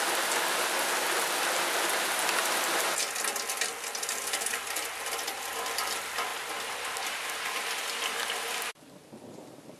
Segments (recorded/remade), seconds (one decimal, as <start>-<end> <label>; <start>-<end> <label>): 0.0-9.8 recorded